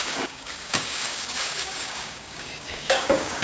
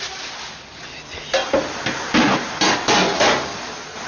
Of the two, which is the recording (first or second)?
second